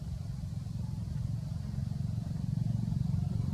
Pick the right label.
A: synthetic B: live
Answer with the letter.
A